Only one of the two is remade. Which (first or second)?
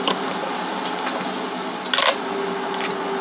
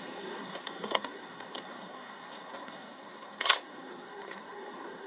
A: second